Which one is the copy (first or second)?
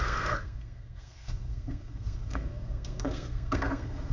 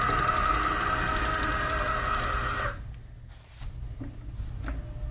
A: first